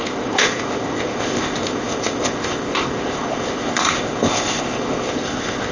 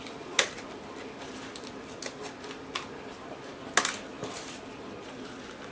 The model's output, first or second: first